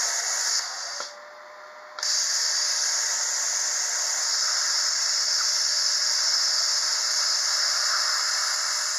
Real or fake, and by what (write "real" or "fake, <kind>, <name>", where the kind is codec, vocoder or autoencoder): real